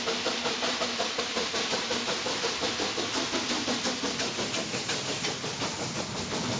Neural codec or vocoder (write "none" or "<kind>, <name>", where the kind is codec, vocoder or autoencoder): none